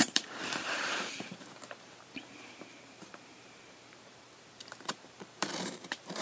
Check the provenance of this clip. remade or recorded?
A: remade